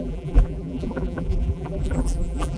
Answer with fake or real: fake